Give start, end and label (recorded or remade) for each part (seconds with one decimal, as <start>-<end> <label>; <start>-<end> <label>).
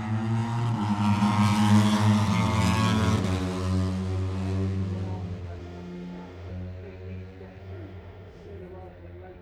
0.0-5.6 recorded; 5.6-6.5 remade; 6.5-7.6 recorded; 7.6-8.6 remade; 8.6-9.4 recorded